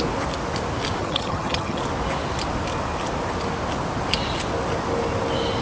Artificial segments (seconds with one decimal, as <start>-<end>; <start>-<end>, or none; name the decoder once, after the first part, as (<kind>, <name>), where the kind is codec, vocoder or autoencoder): 1.0-1.8 (vocoder, HiFi-GAN)